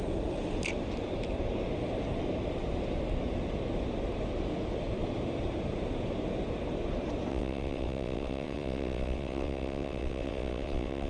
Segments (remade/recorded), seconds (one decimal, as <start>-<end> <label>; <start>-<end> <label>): 0.0-7.3 recorded; 7.3-11.1 remade